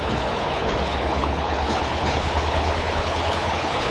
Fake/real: fake